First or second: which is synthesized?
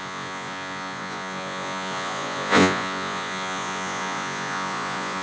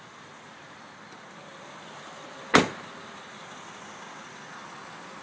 first